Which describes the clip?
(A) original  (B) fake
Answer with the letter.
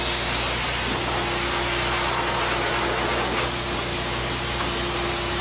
A